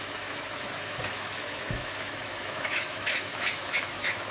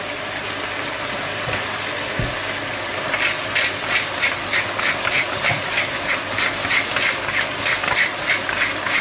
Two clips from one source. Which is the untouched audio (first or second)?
second